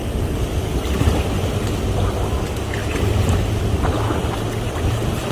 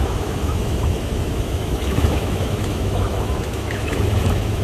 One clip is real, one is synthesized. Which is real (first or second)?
first